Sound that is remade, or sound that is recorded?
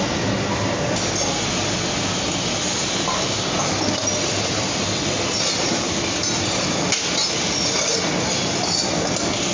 recorded